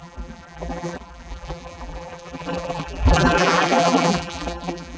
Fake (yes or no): yes